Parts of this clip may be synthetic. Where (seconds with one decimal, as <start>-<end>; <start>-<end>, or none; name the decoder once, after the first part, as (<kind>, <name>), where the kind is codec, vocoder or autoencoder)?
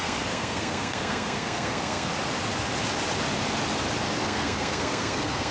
0.0-2.1 (codec, SNAC); 4.2-5.5